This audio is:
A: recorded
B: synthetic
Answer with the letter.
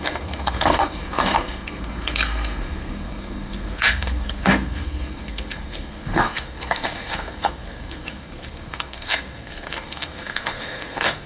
B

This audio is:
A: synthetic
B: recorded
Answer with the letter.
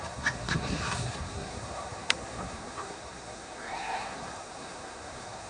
A